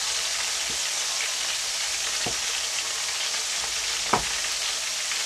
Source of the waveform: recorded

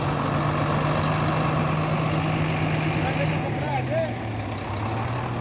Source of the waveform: recorded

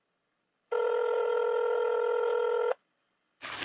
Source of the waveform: recorded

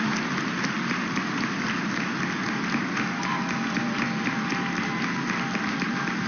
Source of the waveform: recorded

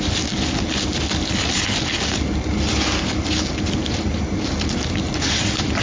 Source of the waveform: recorded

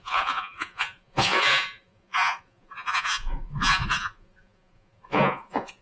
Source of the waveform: remade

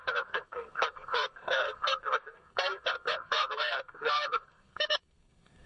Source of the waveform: remade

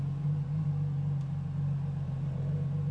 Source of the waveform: recorded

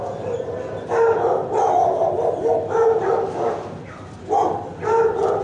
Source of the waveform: recorded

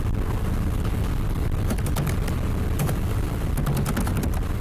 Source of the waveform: recorded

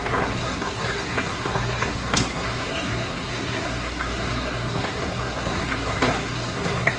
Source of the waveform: remade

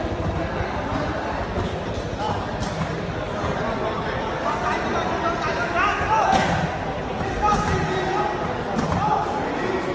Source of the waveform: recorded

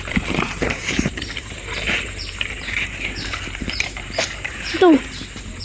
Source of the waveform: remade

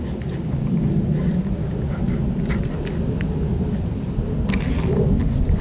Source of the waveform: recorded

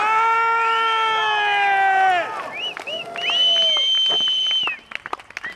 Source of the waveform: recorded